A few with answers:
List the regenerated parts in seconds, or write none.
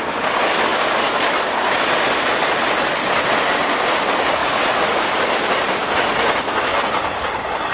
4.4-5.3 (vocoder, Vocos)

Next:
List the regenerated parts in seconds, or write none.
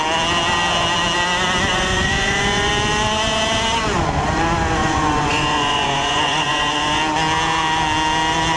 1.7-2.7 (vocoder, Vocos); 4.8-7.0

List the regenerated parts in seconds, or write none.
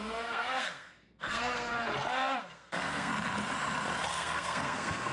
0.0-1.7 (codec, SNAC); 2.4-3.1; 4.1-5.1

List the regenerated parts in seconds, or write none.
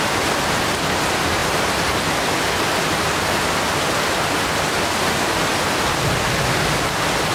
none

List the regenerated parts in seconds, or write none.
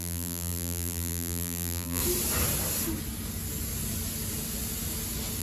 0.0-2.0 (vocoder, BigVGAN v2)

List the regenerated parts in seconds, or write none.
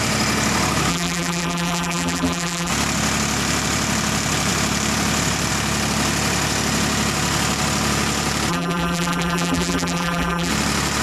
0.9-2.7 (vocoder, BigVGAN v2); 8.5-10.5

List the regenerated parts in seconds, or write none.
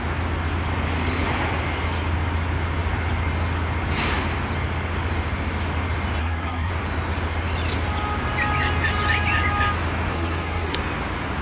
6.2-6.7 (codec, SNAC); 10.1-10.8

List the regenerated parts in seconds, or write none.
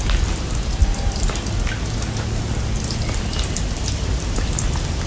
none